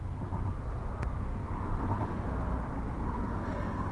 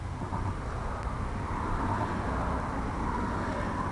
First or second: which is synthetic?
second